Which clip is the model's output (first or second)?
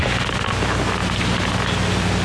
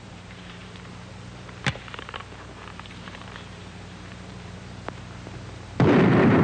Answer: second